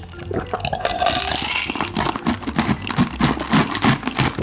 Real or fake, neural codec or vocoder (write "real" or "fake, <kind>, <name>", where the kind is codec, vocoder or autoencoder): real